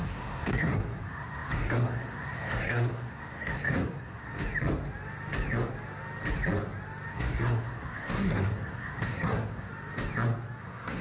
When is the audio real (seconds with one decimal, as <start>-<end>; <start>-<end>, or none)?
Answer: 4.3-7.1; 9.7-10.6